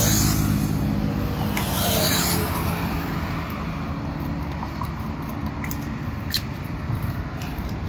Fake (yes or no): no